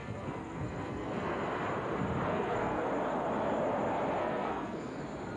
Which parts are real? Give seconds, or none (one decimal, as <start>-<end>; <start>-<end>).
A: 1.4-2.3; 2.9-4.2; 5.0-5.4